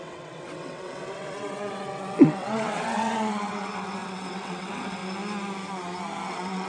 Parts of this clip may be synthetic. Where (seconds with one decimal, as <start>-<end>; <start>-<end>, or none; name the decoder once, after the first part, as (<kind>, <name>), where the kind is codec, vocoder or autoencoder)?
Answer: 0.0-5.0 (vocoder, WaveNeXt); 6.3-6.7